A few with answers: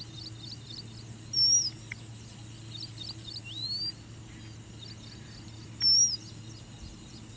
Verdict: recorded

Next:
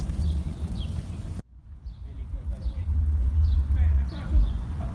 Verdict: remade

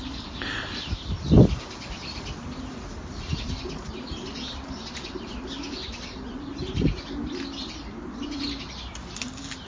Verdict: recorded